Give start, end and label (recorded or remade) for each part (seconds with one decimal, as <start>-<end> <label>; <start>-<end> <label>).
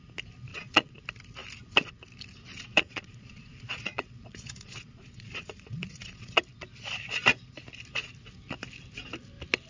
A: 0.0-0.5 recorded; 0.5-1.0 remade; 1.0-2.5 recorded; 2.5-6.4 remade; 6.4-9.7 recorded